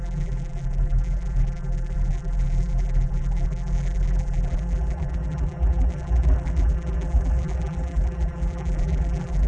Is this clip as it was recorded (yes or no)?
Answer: no